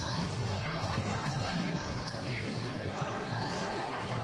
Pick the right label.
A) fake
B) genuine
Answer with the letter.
A